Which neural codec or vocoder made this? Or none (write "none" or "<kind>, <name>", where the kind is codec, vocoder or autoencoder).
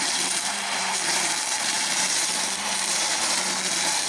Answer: vocoder, BigVGAN v2